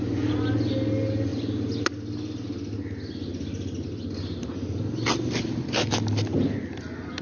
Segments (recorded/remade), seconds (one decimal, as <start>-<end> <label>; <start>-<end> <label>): 0.0-7.2 recorded